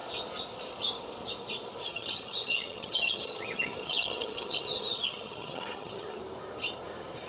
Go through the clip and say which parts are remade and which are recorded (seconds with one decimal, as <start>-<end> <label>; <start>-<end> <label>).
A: 0.0-1.8 recorded; 1.8-6.2 remade; 6.2-7.3 recorded